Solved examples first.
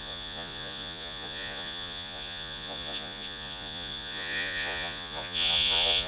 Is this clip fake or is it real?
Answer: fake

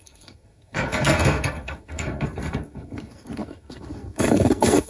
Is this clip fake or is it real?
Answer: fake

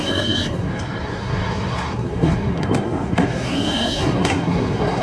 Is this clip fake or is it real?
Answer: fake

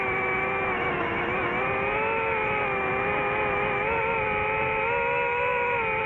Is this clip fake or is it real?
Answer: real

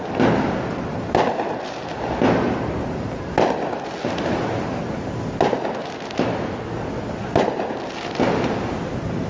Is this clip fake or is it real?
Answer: real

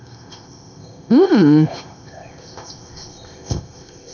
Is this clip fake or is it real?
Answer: fake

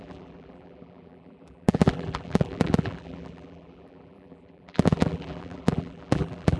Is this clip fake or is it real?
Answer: fake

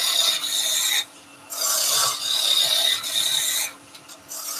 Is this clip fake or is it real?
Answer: real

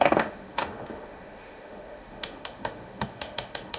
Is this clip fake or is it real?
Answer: fake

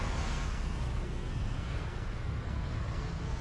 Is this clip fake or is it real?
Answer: fake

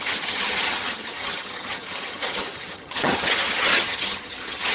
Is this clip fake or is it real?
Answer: fake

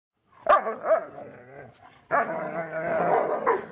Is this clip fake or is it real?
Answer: real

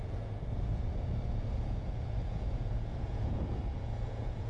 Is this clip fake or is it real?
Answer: fake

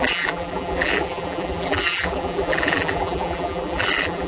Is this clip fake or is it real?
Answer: fake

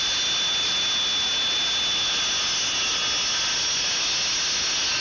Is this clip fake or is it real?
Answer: real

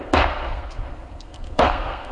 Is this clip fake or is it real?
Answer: fake